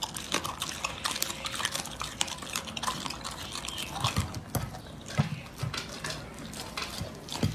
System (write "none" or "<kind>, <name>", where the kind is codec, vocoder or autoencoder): none